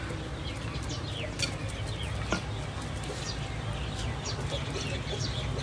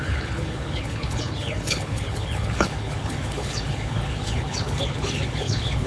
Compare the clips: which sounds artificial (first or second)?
second